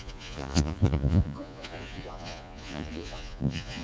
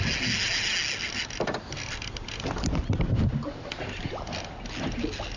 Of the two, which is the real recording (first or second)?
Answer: second